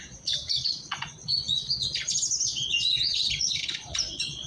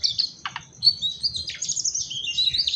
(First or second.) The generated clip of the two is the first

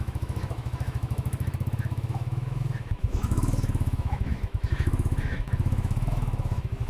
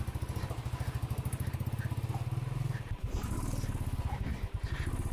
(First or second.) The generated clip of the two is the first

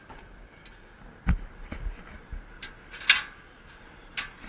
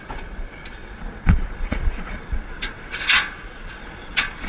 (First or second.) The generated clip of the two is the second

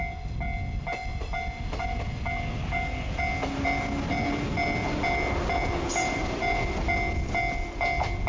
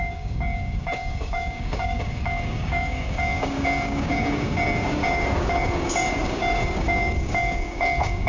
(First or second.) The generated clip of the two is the second